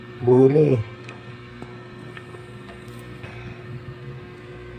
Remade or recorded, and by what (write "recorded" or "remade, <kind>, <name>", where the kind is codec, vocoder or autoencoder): remade, codec, SNAC